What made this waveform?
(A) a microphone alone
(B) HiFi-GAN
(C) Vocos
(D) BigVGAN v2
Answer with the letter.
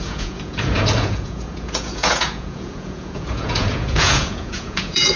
C